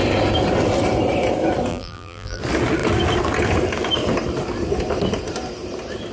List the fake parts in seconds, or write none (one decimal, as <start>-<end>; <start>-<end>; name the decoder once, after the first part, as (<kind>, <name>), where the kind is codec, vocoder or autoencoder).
1.7-2.4 (vocoder, BigVGAN v2)